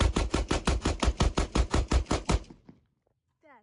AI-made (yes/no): no